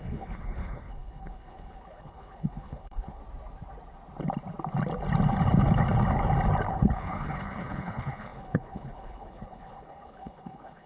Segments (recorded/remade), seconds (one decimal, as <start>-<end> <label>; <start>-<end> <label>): 0.0-3.2 remade; 3.2-6.7 recorded; 6.7-10.9 remade